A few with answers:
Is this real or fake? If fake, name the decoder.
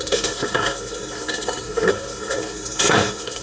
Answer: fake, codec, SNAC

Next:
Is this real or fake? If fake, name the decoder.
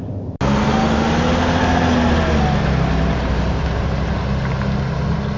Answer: real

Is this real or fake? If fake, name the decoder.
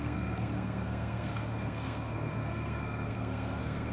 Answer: fake, codec, SNAC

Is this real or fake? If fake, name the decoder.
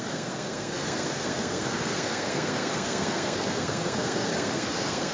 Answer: fake, codec, SNAC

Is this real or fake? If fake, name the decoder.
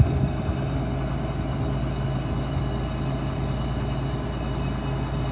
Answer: real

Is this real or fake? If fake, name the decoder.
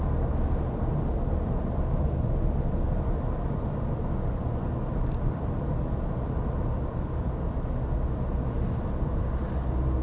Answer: real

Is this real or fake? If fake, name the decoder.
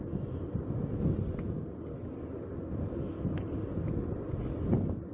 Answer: real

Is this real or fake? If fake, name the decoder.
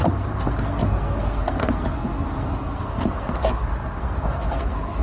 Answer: fake, codec, SNAC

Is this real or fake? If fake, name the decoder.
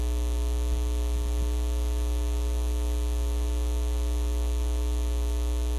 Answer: real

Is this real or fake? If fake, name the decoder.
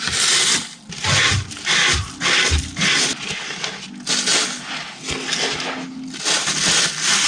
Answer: real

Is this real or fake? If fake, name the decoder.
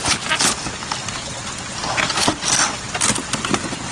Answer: real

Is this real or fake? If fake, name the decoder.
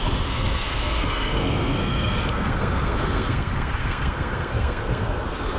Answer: fake, codec, SNAC